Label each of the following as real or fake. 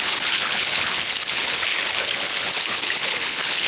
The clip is fake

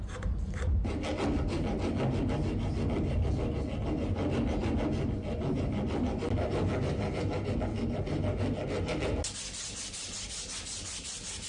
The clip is real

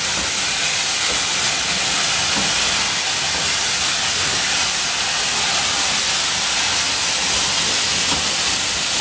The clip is real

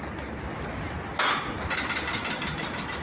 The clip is real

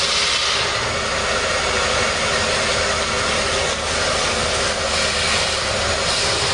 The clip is real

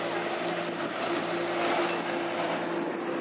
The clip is real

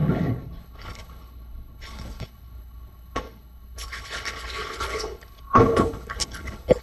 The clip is fake